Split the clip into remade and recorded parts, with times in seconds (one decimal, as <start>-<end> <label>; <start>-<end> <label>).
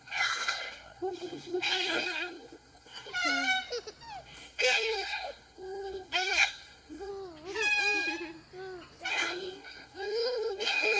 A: 0.0-3.1 remade; 3.1-4.2 recorded; 4.2-7.1 remade; 7.1-9.1 recorded; 9.1-11.0 remade